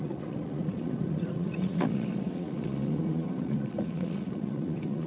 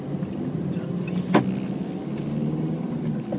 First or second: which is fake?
first